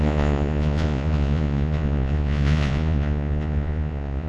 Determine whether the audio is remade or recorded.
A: remade